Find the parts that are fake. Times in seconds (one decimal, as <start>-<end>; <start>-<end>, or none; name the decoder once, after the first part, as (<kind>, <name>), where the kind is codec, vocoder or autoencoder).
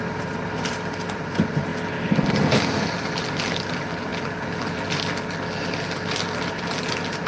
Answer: none